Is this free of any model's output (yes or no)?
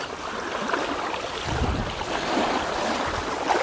yes